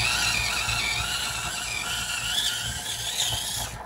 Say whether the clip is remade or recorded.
recorded